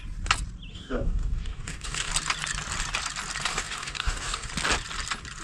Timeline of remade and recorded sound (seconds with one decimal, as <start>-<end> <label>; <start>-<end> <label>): 0.0-0.7 recorded; 0.7-2.1 remade; 2.1-3.5 recorded; 3.5-4.5 remade; 4.5-5.4 recorded